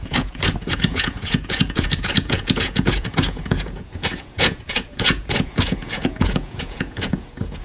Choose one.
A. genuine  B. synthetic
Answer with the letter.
B